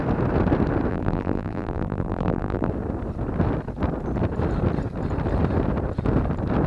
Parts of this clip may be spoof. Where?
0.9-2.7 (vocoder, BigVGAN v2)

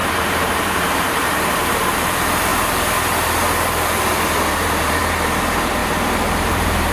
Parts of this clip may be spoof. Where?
0.0-2.5 (vocoder, BigVGAN v2); 4.5-5.8; 6.5-6.9

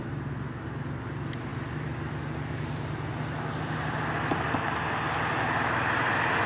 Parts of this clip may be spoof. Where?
none

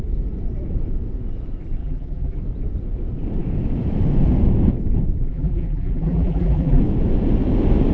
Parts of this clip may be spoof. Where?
1.8-2.4 (vocoder, BigVGAN v2); 5.3-6.8

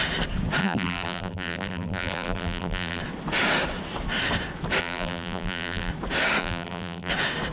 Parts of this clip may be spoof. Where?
0.6-3.0 (vocoder, BigVGAN v2); 4.8-5.9; 6.4-7.1

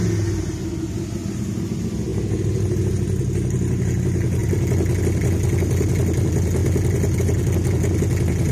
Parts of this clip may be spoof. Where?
4.4-5.0 (vocoder, BigVGAN v2)